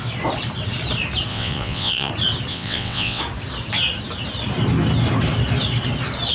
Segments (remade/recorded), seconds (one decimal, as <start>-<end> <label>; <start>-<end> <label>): 0.0-1.3 recorded; 1.3-2.1 remade; 2.1-2.5 recorded; 2.5-3.2 remade; 3.2-6.3 recorded